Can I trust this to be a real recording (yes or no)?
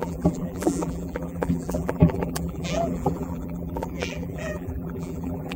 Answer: no